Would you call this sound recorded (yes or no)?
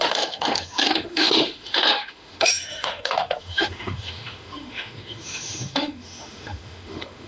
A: no